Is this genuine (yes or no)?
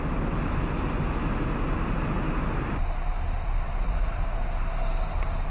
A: yes